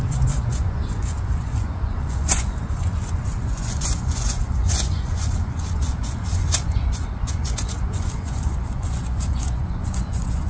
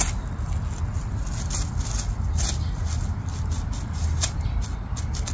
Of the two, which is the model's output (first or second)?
first